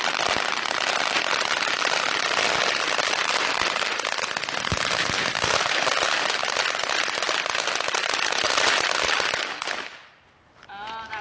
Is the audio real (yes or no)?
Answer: yes